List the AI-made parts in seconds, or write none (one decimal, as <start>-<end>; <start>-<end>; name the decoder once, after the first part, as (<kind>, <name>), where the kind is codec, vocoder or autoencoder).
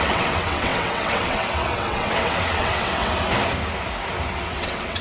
0.0-3.1 (vocoder, WaveNeXt); 4.3-5.0